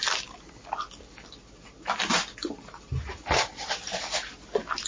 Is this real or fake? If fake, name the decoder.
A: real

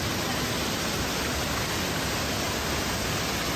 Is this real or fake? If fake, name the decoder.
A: real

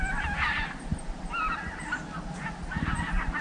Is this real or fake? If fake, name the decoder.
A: real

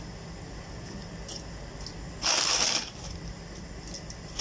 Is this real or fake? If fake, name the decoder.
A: real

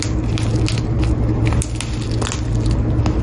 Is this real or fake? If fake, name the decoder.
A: real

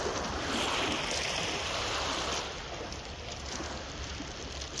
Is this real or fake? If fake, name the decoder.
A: real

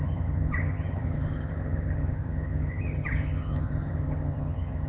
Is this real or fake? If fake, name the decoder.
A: fake, vocoder, HiFi-GAN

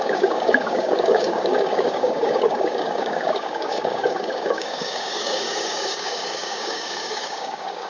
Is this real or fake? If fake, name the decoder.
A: fake, codec, DAC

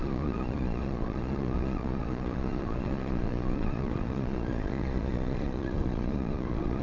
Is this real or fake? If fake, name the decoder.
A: fake, vocoder, Vocos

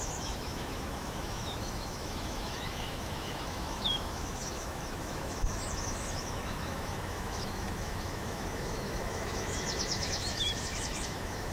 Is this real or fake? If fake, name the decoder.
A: fake, autoencoder, DAC-VAE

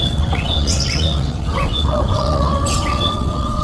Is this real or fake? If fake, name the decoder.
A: fake, vocoder, WaveNeXt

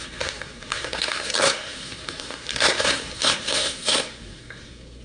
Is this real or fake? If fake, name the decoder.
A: fake, codec, SNAC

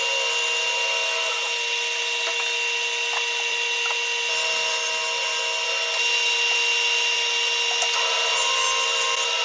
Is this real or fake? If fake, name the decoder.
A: real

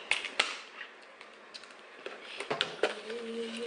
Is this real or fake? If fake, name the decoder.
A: real